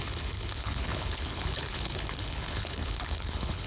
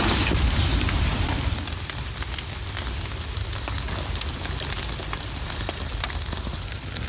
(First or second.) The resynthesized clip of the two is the first